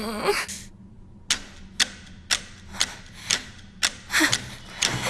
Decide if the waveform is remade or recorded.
recorded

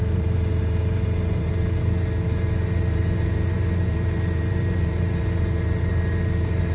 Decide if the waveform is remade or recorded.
remade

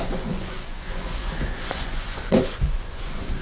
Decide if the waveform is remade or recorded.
remade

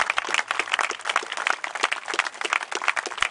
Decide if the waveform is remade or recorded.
recorded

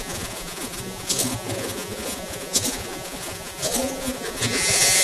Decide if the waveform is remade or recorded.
remade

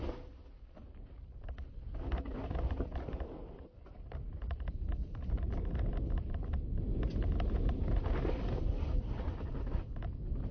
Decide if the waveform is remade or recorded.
recorded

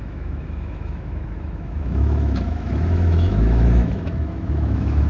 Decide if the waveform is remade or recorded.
remade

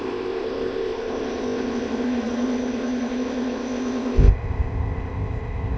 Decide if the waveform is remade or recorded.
remade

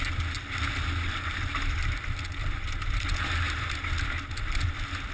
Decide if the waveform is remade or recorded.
recorded